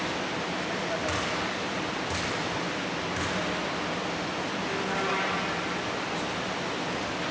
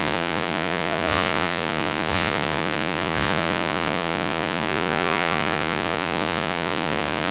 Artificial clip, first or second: second